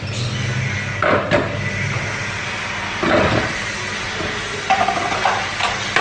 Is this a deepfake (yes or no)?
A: no